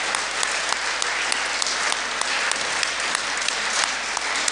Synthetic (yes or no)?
no